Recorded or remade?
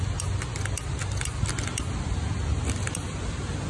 recorded